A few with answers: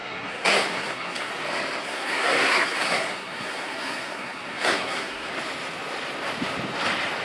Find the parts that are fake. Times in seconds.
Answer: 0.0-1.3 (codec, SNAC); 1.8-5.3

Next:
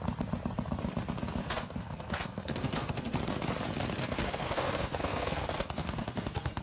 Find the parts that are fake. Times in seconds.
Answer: 1.4-3.2 (codec, SNAC); 4.0-6.6

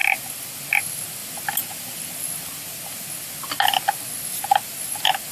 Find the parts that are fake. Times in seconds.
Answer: none